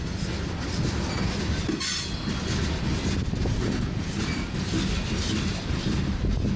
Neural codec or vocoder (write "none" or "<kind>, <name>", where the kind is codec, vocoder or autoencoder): none